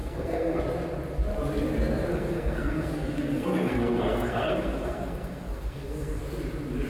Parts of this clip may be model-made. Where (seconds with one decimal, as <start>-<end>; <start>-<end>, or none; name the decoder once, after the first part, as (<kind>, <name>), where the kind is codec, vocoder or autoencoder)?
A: 0.0-0.6 (codec, SNAC); 2.1-6.2